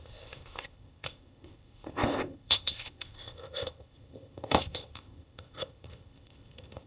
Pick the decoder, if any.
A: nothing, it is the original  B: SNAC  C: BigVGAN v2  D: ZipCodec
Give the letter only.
D